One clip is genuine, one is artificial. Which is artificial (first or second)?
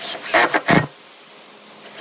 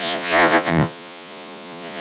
second